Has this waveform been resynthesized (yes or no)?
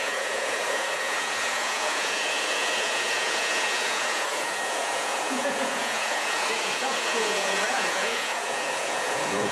yes